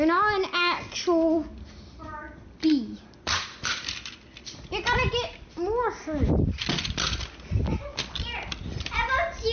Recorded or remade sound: recorded